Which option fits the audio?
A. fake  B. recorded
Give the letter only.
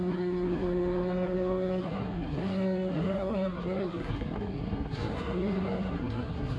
A